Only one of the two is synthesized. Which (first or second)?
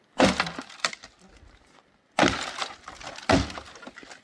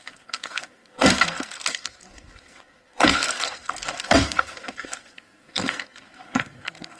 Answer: second